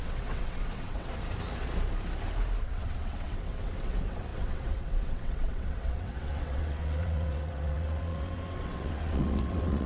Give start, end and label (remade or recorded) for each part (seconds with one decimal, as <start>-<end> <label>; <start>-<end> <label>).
0.0-1.1 remade; 1.1-2.6 recorded; 2.6-9.9 remade